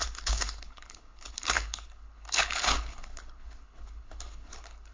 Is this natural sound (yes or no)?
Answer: no